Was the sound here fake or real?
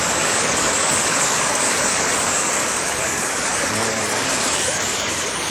fake